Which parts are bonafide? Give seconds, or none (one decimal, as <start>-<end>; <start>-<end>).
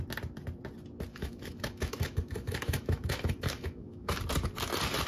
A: 0.0-1.1; 4.2-5.1